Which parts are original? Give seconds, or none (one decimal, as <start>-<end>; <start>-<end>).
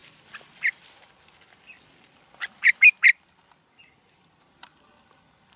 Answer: 0.0-5.6